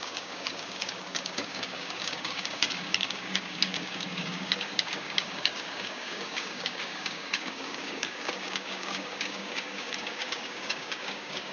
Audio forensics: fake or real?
fake